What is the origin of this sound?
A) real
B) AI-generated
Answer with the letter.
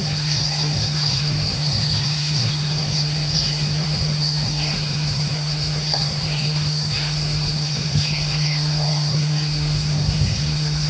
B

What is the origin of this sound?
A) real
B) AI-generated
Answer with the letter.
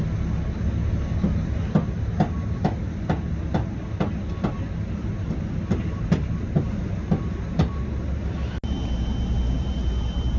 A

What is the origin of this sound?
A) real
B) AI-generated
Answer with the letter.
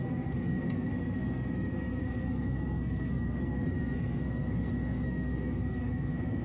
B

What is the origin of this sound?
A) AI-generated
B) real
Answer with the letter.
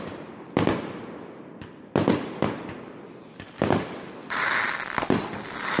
B